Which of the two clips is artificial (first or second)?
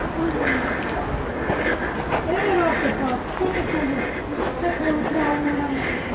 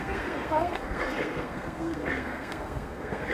second